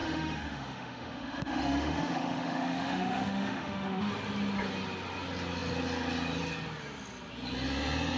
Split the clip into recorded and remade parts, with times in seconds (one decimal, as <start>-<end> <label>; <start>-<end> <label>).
0.0-4.1 remade; 4.1-8.2 recorded

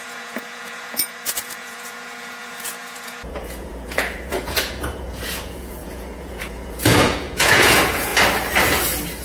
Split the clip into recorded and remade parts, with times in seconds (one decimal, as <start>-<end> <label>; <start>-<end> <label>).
0.0-8.1 remade; 8.1-9.2 recorded

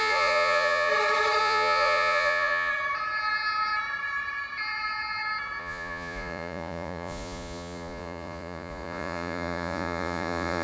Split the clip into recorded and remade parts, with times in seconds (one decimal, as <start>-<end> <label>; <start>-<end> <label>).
0.0-0.9 remade; 0.9-1.4 recorded; 1.4-2.7 remade; 2.7-5.6 recorded; 5.6-10.6 remade

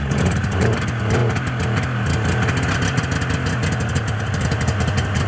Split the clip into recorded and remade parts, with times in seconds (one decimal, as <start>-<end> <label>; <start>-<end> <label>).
0.0-1.2 remade; 1.2-4.2 recorded; 4.2-5.3 remade

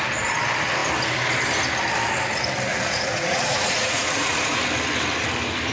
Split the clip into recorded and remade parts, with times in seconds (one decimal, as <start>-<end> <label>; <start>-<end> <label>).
0.0-2.7 recorded; 2.7-4.6 remade; 4.6-5.7 recorded